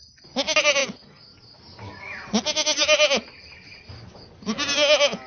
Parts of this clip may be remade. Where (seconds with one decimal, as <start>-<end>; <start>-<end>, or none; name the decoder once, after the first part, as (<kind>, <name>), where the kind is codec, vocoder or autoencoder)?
none